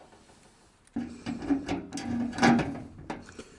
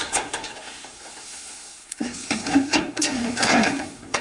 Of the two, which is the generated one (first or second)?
second